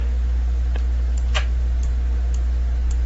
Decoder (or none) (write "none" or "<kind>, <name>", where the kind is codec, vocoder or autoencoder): vocoder, BigVGAN v2